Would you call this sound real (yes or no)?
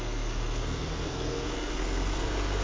no